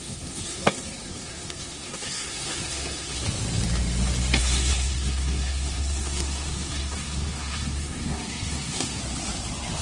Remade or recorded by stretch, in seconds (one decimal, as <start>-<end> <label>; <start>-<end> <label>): 0.0-3.2 remade; 3.2-4.4 recorded; 4.4-9.0 remade; 9.0-9.8 recorded